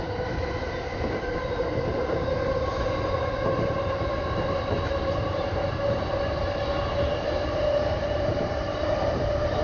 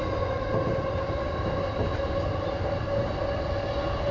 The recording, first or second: second